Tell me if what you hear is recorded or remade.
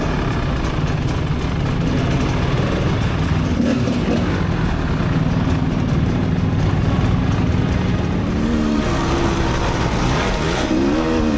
recorded